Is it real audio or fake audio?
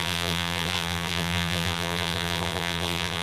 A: fake